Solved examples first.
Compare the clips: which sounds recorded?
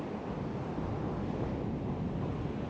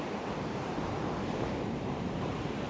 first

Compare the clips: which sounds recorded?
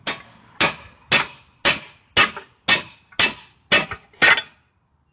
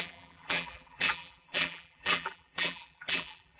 first